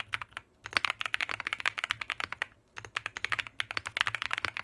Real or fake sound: real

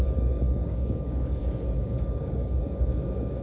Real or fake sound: fake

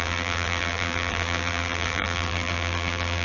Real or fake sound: fake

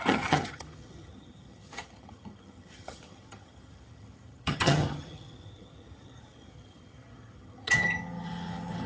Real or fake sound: fake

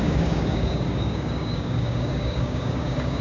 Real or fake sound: fake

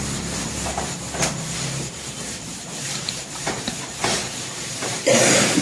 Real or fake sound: fake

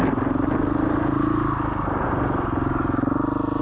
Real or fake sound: real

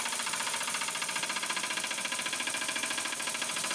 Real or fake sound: fake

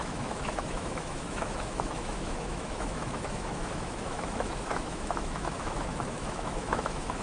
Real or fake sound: fake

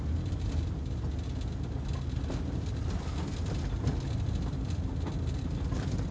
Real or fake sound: real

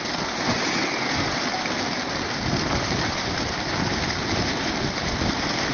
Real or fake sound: real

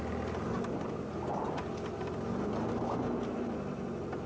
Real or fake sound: real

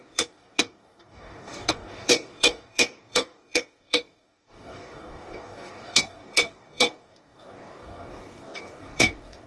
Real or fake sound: fake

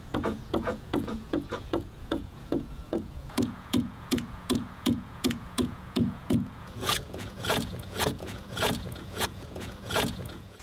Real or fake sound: fake